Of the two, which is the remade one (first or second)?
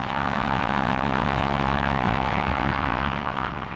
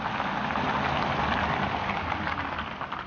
first